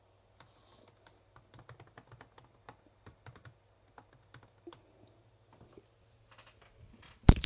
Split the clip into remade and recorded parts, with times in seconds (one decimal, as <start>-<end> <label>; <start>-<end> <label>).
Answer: 0.0-7.5 recorded